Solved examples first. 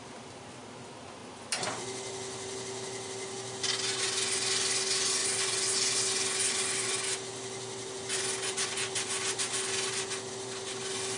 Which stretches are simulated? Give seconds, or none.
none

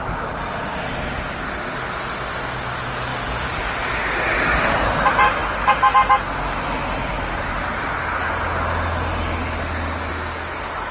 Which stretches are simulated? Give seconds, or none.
none